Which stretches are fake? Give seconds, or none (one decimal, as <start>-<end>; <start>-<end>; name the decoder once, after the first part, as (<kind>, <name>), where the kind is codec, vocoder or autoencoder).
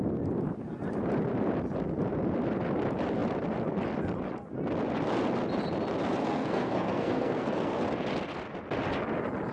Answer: 6.2-7.8 (codec, SNAC)